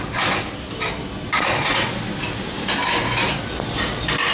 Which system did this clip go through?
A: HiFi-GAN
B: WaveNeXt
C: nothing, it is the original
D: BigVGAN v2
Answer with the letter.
C